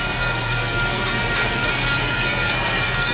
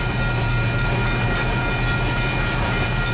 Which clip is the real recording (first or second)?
second